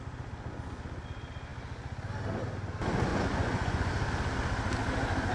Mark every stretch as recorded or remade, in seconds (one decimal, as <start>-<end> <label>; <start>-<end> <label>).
0.0-3.1 recorded; 3.1-3.9 remade; 3.9-5.3 recorded